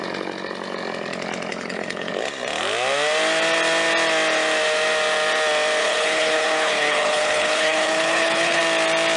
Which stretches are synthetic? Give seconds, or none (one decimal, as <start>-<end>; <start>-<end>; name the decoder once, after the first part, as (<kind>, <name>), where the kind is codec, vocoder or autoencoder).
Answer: 1.5-2.1 (codec, HILCodec); 5.8-8.6